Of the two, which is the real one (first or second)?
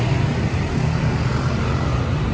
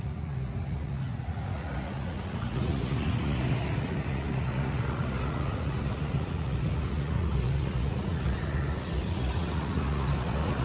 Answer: first